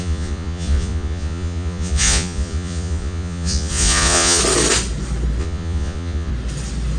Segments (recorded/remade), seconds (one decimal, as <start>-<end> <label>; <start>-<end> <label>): 0.0-4.4 remade; 4.4-5.4 recorded; 5.4-6.3 remade; 6.3-7.0 recorded